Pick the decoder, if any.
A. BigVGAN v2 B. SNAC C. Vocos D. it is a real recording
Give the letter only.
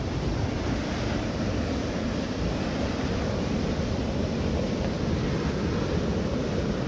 A